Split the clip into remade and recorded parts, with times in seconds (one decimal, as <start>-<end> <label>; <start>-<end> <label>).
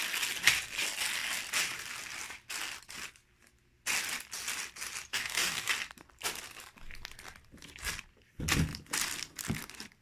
0.0-5.1 recorded; 5.1-5.7 remade; 5.7-10.0 recorded